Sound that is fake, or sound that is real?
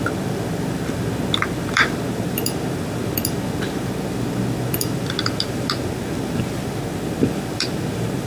fake